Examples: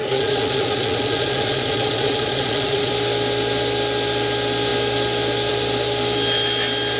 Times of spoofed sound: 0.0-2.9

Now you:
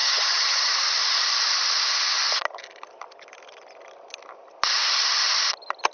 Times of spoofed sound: 0.0-0.7

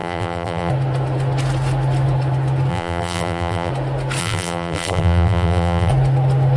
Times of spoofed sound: 0.0-0.7; 2.7-3.7; 4.2-5.9

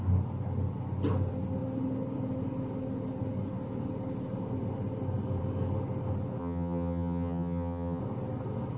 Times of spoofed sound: 6.4-8.0

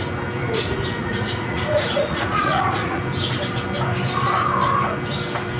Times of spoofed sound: 1.0-3.0

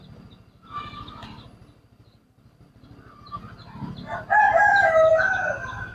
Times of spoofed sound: none